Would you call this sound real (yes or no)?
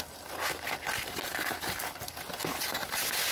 yes